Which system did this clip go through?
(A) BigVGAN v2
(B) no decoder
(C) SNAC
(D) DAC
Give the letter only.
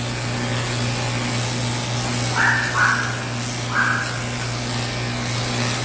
B